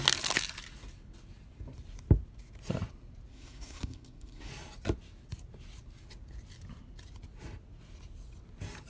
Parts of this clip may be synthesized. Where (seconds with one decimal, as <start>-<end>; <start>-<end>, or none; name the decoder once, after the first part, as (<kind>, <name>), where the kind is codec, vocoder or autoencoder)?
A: 3.3-4.5 (codec, SNAC)